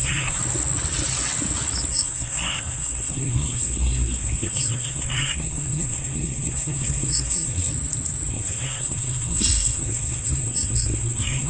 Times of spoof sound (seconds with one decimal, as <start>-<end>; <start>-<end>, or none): 0.0-0.4; 1.9-7.7; 8.3-11.5